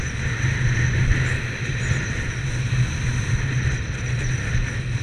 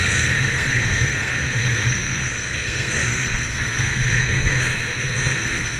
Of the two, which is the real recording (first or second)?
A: first